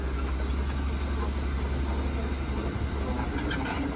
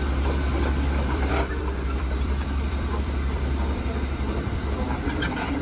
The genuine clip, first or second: first